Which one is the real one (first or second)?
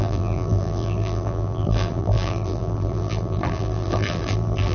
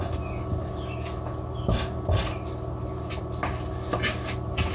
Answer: second